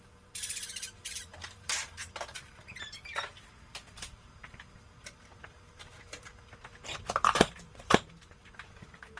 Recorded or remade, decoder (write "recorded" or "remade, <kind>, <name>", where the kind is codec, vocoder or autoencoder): remade, vocoder, BigVGAN v2